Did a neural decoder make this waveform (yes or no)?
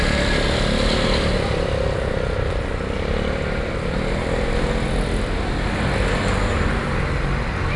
no